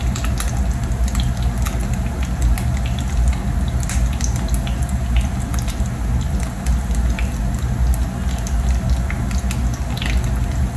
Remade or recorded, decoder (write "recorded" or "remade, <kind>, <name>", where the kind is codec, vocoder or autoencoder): recorded